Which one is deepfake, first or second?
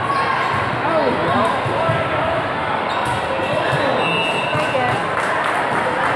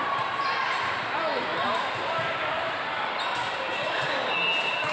second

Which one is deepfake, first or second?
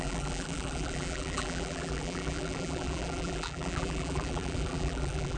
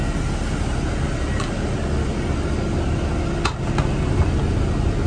first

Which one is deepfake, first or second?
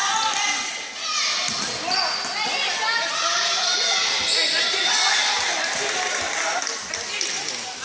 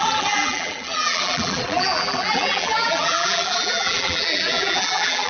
second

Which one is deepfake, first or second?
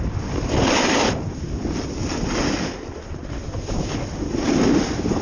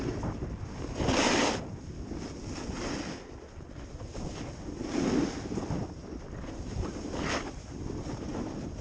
first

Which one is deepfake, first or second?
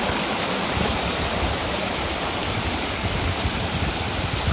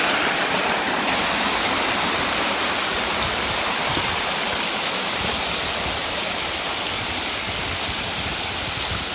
first